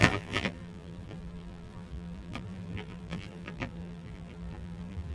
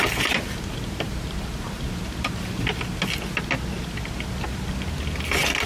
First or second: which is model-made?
first